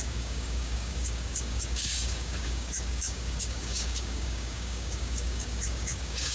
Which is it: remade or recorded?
remade